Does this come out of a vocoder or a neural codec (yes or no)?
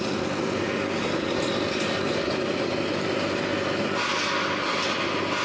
no